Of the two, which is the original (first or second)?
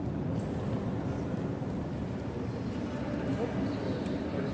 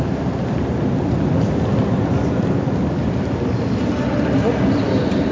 first